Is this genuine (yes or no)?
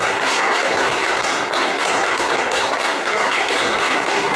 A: no